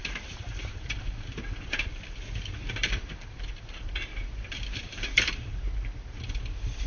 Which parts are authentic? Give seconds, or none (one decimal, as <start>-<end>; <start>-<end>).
1.9-2.7